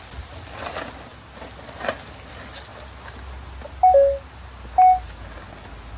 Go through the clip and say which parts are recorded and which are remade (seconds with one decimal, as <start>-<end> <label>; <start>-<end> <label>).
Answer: 0.0-6.0 recorded